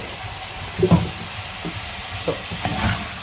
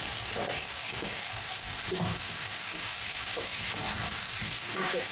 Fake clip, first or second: second